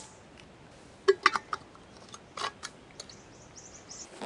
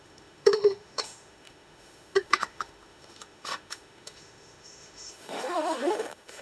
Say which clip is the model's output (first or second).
second